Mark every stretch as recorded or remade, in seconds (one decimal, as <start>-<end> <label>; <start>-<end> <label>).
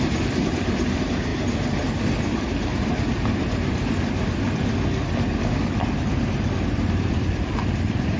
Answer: 0.0-1.3 remade; 1.3-5.5 recorded; 5.5-8.2 remade